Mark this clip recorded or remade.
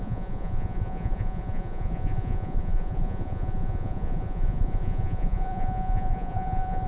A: remade